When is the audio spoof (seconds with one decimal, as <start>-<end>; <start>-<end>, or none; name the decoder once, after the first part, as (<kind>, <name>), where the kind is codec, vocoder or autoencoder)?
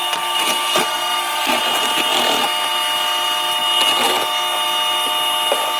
0.0-1.6 (codec, SNAC)